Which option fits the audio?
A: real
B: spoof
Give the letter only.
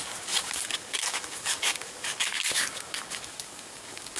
B